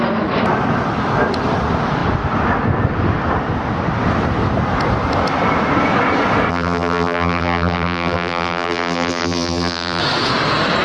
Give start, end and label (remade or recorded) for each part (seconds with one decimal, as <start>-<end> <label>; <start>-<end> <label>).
0.0-6.5 recorded; 6.5-10.0 remade; 10.0-10.8 recorded